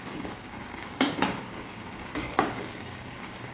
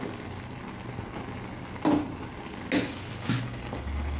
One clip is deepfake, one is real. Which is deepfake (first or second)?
first